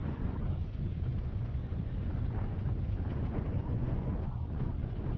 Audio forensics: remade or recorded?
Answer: remade